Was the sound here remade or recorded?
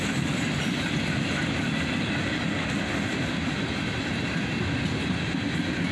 recorded